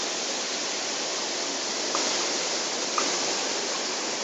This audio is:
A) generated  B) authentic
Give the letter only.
B